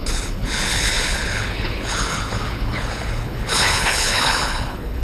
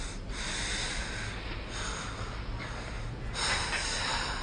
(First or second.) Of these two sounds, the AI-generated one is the first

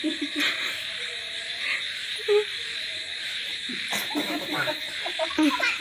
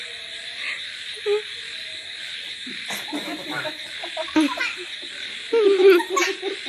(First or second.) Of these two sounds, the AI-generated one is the first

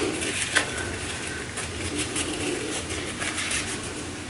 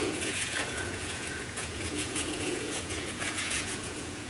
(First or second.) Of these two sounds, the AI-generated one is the second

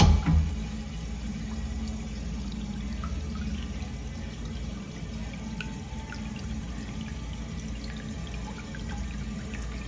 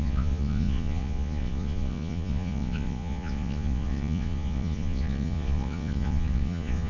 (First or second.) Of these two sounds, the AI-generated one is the second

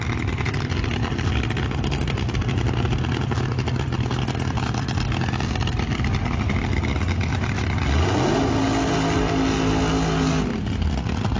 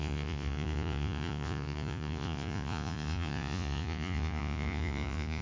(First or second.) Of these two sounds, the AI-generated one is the second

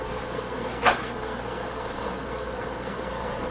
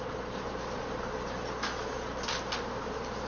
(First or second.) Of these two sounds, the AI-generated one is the first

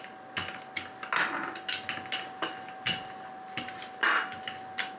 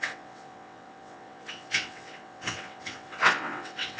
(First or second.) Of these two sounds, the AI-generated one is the second